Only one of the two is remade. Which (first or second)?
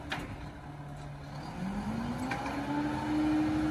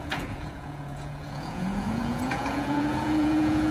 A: second